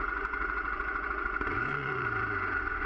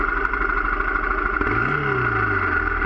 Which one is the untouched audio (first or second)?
second